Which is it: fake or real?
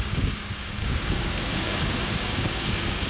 fake